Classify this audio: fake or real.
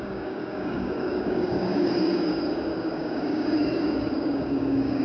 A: fake